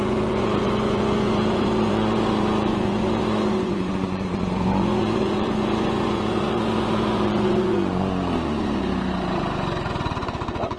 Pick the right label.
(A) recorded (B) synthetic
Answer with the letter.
B